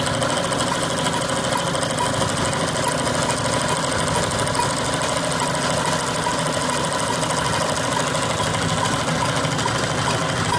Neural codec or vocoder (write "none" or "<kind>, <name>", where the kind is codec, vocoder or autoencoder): none